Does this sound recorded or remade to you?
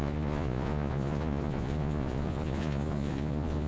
remade